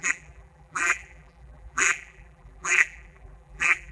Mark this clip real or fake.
fake